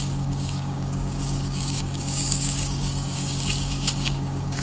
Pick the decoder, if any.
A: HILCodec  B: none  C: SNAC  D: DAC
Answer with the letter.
D